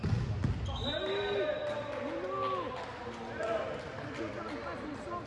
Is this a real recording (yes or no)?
yes